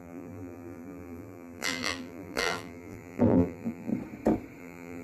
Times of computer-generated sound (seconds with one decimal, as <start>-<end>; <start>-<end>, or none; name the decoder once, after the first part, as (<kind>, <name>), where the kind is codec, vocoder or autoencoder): 0.0-3.9 (vocoder, BigVGAN v2); 4.6-5.0